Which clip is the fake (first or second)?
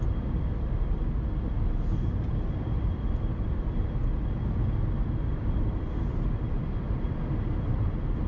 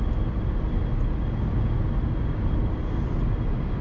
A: first